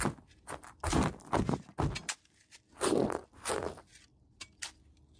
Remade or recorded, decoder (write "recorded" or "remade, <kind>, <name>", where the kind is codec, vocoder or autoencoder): recorded